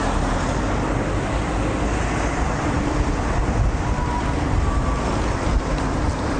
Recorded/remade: recorded